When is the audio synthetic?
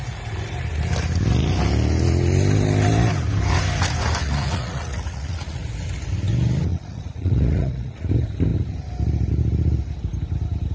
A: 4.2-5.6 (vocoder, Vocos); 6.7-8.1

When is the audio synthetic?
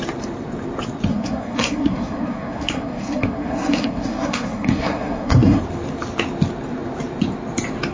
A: 1.1-5.6 (codec, SNAC)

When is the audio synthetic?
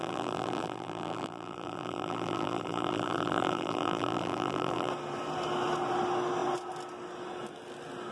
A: 0.0-4.9 (vocoder, BigVGAN v2)